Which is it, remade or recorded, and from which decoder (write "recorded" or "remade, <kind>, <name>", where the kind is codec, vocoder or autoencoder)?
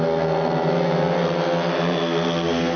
recorded